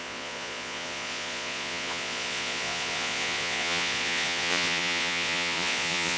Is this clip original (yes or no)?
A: no